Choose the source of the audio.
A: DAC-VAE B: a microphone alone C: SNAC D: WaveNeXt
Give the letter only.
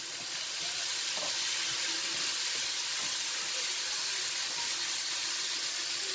B